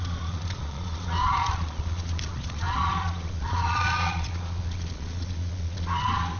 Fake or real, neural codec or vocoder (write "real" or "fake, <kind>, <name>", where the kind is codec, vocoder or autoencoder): fake, vocoder, Vocos